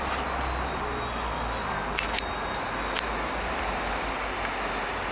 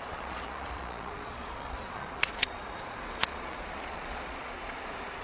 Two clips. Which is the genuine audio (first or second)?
first